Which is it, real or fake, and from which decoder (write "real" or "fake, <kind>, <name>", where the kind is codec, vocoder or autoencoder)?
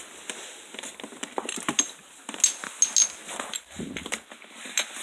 real